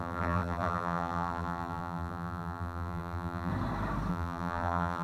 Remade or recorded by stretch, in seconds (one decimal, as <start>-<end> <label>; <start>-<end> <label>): 0.0-3.5 remade; 3.5-4.1 recorded; 4.1-5.0 remade